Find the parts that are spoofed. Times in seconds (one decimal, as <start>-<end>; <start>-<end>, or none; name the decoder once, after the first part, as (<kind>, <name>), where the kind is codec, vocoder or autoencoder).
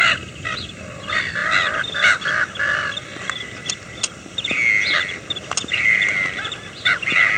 none